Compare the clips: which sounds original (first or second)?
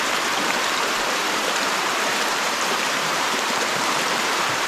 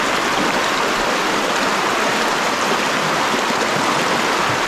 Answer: second